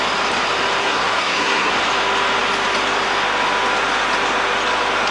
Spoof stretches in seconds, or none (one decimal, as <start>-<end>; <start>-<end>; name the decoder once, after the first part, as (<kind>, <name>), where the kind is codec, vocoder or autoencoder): 0.8-1.7 (codec, SNAC)